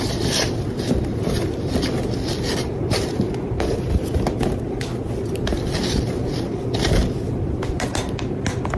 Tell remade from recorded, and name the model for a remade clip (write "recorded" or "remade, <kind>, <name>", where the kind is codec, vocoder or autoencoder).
recorded